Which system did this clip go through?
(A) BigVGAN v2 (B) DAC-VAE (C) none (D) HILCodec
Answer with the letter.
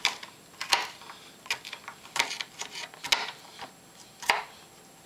C